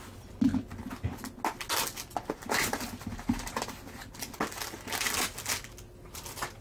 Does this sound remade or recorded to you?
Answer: recorded